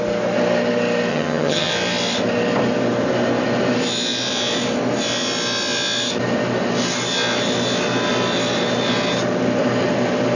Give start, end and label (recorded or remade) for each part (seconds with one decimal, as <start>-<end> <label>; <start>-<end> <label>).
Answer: 0.0-1.1 recorded; 1.1-1.7 remade; 1.7-10.4 recorded